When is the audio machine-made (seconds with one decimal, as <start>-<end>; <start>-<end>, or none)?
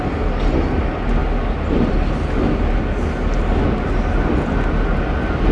none